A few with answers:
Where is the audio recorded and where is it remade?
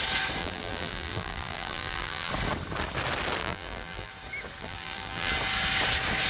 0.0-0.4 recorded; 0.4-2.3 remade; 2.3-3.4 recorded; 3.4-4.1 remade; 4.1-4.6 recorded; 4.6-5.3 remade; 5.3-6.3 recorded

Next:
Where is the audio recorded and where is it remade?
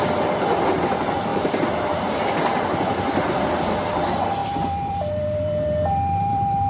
0.0-4.4 recorded; 4.4-6.7 remade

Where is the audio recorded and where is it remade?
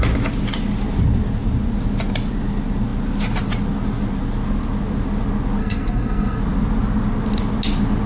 0.0-5.6 recorded; 5.6-6.4 remade; 6.4-8.1 recorded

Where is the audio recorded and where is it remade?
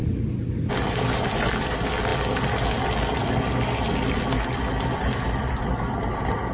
0.0-6.5 recorded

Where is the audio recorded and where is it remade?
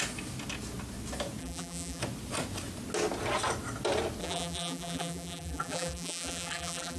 0.0-1.4 recorded; 1.4-2.0 remade; 2.0-4.2 recorded; 4.2-7.0 remade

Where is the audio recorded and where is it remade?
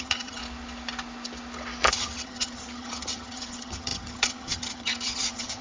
0.0-0.4 remade; 0.4-1.9 recorded; 1.9-5.6 remade